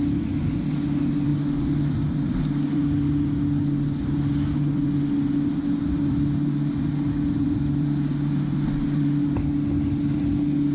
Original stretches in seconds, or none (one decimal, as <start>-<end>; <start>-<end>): 0.0-10.7